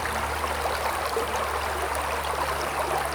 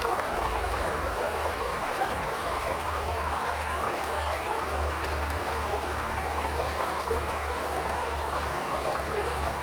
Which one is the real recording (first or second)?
first